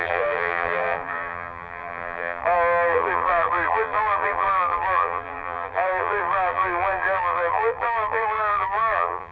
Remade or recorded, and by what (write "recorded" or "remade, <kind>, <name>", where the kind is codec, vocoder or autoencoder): remade, vocoder, BigVGAN v2